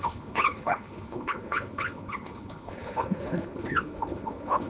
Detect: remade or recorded remade